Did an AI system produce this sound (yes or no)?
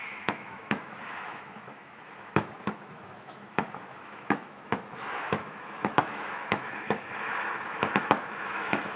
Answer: yes